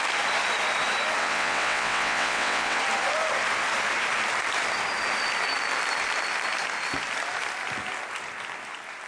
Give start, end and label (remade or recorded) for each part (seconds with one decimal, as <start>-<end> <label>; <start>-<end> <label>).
0.0-1.2 recorded; 1.2-2.8 remade; 2.8-9.1 recorded